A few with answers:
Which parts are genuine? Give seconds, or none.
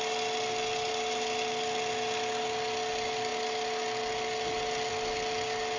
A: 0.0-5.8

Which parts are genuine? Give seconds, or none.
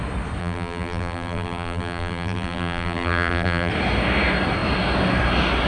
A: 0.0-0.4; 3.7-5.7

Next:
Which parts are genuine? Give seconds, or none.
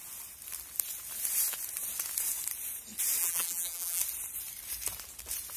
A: 0.0-3.2; 4.0-5.6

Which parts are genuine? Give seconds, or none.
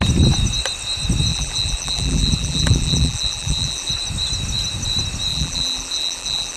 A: 0.0-1.3; 3.9-5.3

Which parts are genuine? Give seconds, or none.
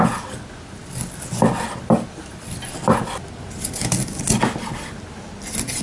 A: 0.0-5.8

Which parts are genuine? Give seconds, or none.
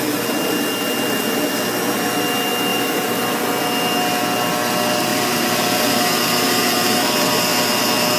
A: 0.0-2.7; 3.4-5.1; 7.4-8.2